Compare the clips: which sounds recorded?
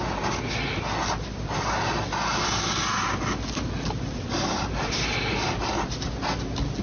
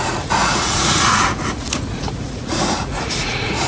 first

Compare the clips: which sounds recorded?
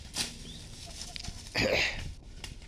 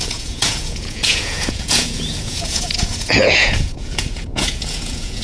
first